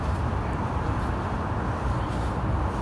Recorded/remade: remade